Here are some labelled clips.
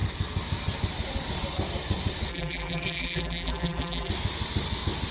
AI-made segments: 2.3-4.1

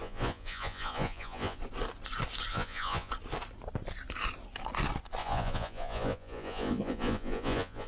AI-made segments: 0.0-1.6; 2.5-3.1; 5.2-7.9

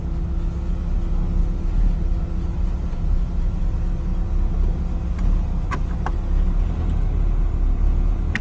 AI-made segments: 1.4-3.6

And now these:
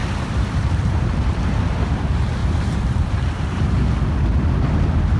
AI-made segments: 0.0-1.1; 2.4-3.9

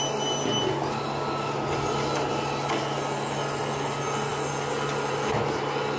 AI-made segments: none

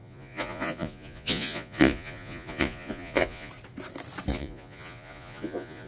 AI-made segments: 0.0-3.5; 4.3-5.9